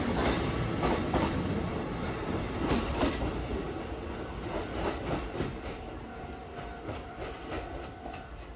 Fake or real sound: real